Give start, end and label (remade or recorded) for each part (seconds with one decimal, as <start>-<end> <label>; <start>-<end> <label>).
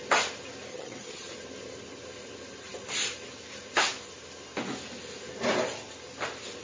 0.0-0.7 recorded; 0.7-1.3 remade; 1.3-6.6 recorded